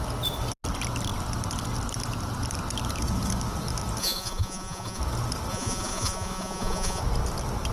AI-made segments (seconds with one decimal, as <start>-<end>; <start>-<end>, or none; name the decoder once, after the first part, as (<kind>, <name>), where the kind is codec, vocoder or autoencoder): 4.0-5.0 (vocoder, Vocos); 5.5-7.0